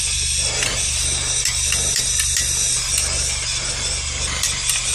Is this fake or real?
real